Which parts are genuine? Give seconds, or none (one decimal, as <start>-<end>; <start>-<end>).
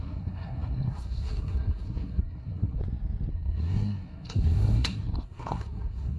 2.8-3.3